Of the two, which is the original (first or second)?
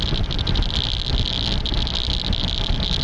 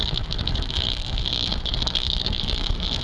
first